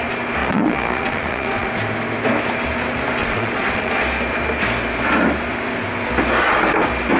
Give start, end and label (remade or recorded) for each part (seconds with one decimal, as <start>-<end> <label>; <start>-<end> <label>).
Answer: 0.0-0.4 recorded; 0.4-1.7 remade; 1.7-3.2 recorded; 3.2-3.9 remade; 3.9-7.2 recorded